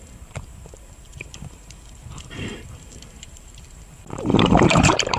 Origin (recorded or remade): remade